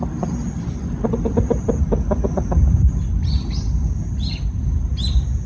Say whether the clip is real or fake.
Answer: real